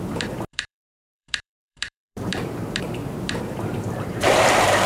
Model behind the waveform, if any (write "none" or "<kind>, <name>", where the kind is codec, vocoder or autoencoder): vocoder, BigVGAN v2